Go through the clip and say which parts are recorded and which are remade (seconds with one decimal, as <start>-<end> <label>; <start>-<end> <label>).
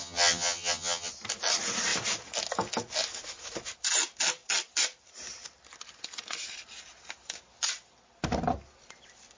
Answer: 0.0-1.1 remade; 1.1-9.4 recorded